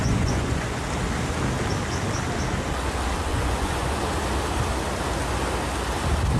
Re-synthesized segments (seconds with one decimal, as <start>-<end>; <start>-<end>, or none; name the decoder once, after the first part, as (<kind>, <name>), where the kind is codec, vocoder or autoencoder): 0.0-0.8 (vocoder, Vocos); 3.3-4.0